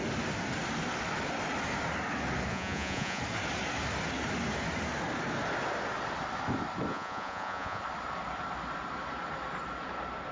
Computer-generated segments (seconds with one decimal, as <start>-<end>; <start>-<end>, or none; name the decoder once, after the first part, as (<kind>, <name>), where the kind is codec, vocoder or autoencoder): 2.5-3.2 (vocoder, Vocos); 6.9-7.8